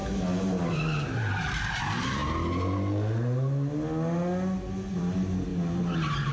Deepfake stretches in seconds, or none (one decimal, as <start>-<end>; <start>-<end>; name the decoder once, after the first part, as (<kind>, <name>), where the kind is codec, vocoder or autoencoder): 0.0-1.8 (vocoder, BigVGAN v2)